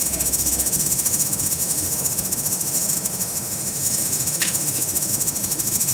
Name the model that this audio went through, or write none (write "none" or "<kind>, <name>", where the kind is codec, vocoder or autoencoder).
autoencoder, DAC-VAE